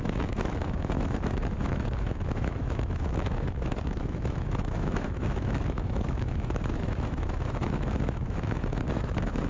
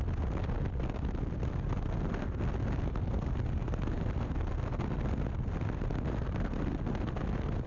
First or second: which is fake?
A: first